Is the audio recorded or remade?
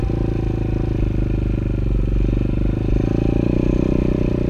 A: recorded